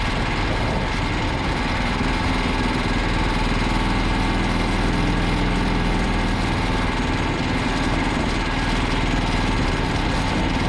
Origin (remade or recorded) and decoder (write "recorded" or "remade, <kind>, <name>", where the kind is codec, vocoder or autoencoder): recorded